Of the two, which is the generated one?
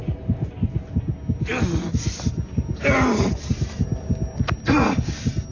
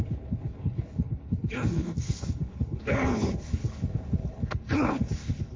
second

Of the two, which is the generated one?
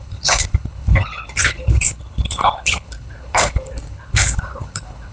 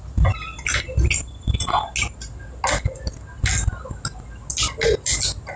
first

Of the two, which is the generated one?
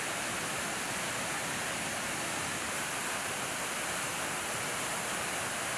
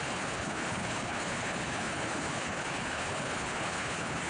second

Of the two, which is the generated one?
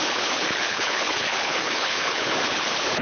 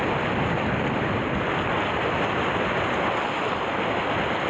first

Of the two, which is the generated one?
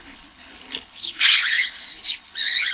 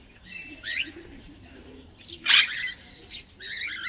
first